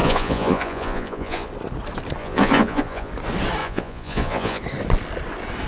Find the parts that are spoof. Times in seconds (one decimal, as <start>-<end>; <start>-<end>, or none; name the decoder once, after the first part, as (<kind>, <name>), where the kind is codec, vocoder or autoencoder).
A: 0.0-1.5 (vocoder, Vocos); 2.2-3.1; 3.6-4.6